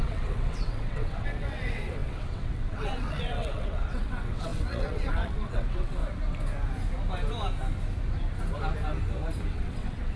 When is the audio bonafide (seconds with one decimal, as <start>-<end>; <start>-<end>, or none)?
6.0-9.5